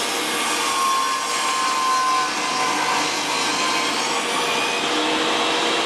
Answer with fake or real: real